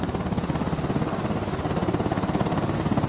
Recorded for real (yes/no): yes